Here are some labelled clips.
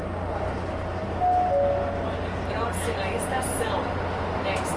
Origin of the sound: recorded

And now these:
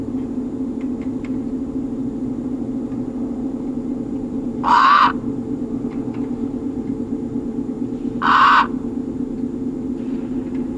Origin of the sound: remade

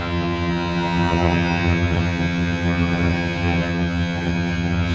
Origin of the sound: remade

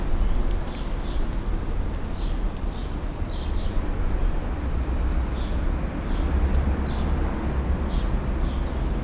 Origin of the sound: recorded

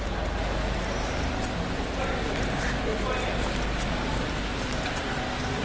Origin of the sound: recorded